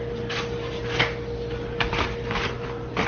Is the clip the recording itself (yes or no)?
yes